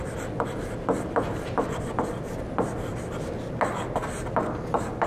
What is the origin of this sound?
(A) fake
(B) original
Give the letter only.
B